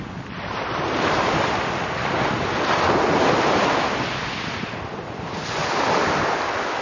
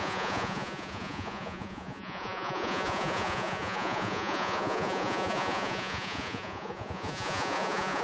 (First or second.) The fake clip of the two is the second